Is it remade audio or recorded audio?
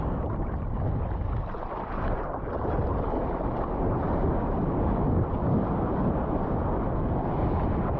recorded